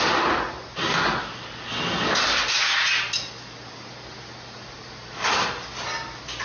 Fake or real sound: real